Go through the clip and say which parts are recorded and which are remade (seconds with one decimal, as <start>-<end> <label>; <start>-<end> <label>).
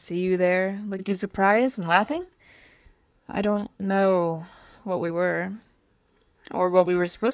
0.0-1.0 recorded; 1.0-2.4 remade; 2.4-2.8 recorded; 2.8-5.1 remade; 5.1-5.9 recorded; 5.9-7.3 remade